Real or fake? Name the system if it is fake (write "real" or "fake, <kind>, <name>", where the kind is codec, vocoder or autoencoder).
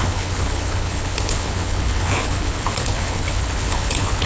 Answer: fake, codec, HILCodec